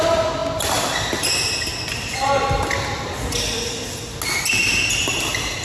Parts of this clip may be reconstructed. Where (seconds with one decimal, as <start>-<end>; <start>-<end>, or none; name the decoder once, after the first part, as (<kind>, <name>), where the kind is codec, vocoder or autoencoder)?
none

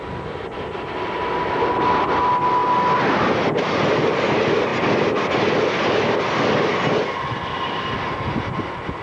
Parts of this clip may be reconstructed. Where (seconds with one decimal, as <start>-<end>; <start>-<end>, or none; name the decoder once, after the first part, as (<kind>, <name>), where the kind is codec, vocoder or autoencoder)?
none

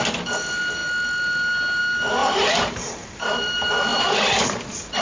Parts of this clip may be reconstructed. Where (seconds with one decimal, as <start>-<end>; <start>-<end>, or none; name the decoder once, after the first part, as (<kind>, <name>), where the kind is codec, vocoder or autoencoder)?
2.2-3.1 (vocoder, BigVGAN v2); 3.9-4.5

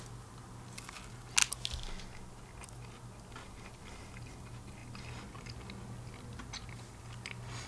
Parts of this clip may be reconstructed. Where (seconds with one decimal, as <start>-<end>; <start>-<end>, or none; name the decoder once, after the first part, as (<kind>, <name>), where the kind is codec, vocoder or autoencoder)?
none

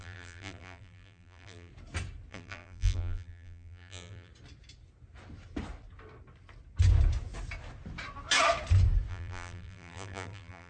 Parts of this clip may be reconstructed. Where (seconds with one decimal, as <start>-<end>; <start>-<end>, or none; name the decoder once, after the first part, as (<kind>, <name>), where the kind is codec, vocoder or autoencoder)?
0.0-1.7 (vocoder, BigVGAN v2); 2.3-4.3; 9.1-10.7